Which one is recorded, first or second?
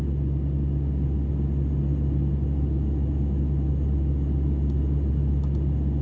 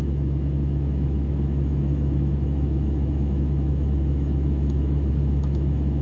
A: first